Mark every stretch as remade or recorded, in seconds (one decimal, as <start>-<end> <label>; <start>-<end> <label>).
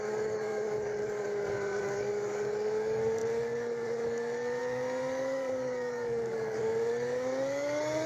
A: 0.0-8.1 remade